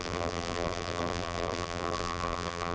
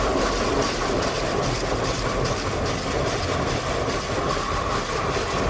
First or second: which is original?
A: second